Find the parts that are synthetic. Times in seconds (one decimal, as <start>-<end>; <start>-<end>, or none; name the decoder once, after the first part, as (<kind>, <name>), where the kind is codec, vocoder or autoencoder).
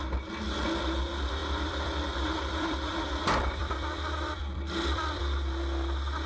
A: 1.4-5.2 (vocoder, BigVGAN v2)